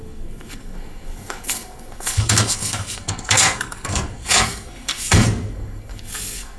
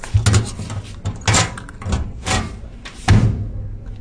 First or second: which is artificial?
first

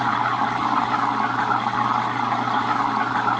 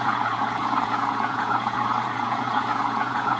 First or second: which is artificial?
second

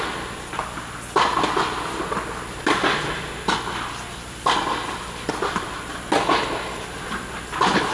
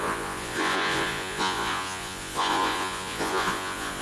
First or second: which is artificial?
second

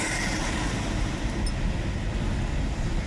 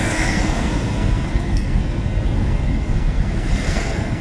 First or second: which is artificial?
second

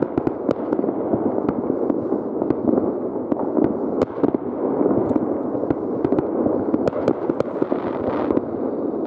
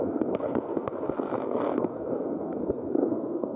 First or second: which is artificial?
second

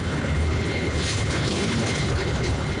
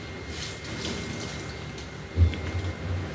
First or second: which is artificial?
first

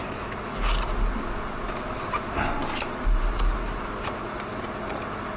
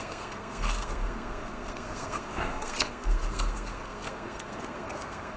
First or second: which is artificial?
second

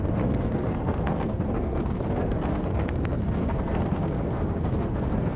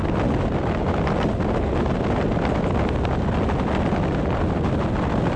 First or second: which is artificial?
first